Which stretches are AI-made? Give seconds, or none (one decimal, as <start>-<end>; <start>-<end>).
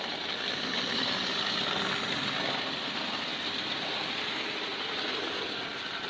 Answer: none